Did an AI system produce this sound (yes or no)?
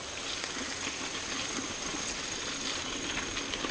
no